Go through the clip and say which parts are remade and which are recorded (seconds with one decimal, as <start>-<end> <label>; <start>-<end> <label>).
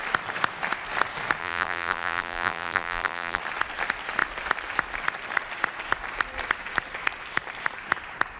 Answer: 0.0-1.4 recorded; 1.4-3.4 remade; 3.4-8.4 recorded